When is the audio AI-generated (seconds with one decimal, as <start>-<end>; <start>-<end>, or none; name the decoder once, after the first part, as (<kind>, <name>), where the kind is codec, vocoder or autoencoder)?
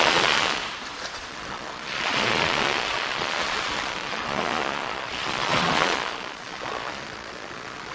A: 0.0-0.6 (vocoder, Vocos); 1.1-7.9